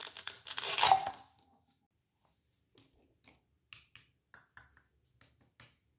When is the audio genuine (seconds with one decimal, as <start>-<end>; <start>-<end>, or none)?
0.0-6.0